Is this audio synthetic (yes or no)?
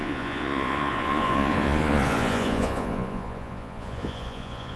yes